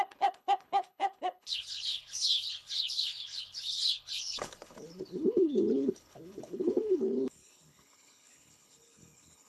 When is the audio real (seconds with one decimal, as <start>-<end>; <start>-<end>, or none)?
none